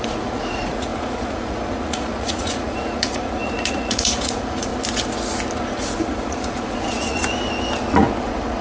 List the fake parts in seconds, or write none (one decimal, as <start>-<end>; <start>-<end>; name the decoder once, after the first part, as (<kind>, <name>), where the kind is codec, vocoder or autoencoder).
0.0-4.7 (vocoder, Vocos); 5.6-7.2; 8.2-8.6